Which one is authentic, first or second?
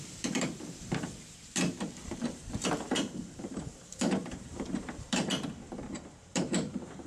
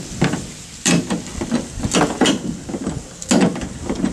second